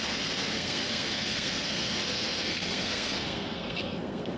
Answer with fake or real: fake